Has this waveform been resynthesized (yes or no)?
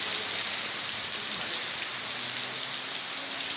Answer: no